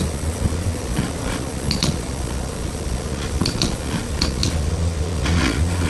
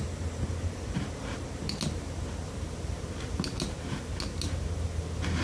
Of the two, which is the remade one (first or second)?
first